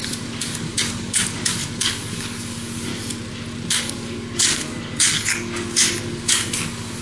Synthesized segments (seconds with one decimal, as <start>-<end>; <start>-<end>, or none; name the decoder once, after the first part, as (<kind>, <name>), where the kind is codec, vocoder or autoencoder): 0.0-2.9 (codec, DAC); 3.8-7.0